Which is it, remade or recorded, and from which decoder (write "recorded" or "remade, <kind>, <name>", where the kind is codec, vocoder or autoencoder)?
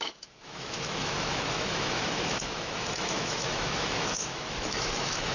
remade, autoencoder, DAC-VAE